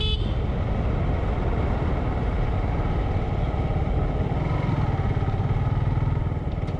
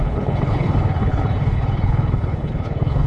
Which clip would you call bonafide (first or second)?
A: first